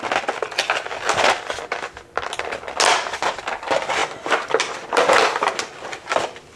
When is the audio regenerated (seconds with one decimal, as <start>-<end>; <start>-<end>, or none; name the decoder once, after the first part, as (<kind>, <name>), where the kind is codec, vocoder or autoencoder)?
none